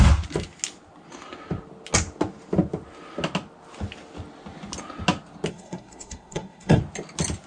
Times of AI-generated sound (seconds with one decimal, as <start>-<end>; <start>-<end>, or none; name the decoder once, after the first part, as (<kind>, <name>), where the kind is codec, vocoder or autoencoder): 5.5-6.8 (codec, SNAC)